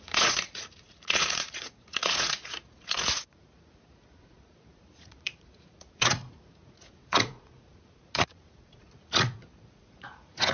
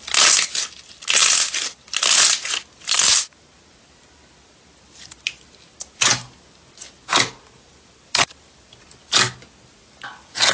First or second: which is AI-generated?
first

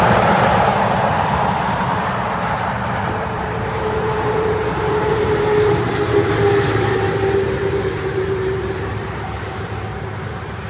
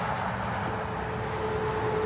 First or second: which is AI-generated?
first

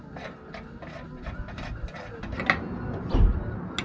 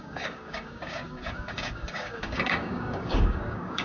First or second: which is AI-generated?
second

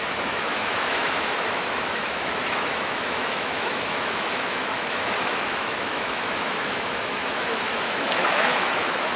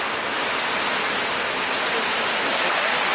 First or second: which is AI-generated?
first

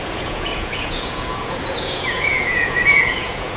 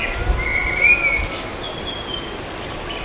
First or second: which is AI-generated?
first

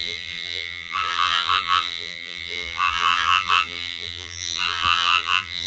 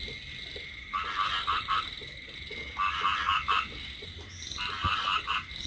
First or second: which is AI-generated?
first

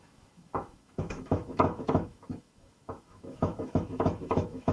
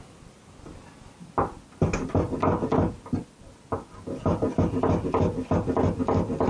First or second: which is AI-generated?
first